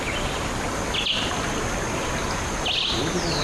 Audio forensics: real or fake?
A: real